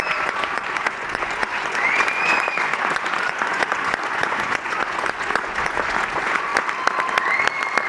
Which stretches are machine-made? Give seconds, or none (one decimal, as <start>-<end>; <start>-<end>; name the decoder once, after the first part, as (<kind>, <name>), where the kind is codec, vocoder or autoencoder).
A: 0.0-6.5 (vocoder, Vocos)